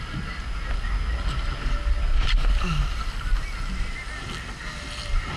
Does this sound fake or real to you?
real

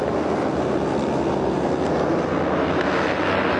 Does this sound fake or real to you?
real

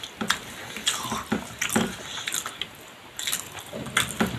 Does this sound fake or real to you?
real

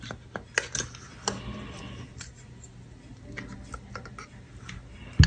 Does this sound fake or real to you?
real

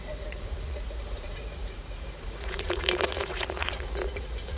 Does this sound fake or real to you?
fake